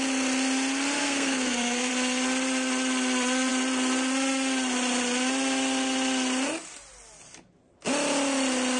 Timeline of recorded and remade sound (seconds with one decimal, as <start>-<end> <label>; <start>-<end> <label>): 0.0-1.0 recorded; 1.0-1.9 remade; 1.9-8.8 recorded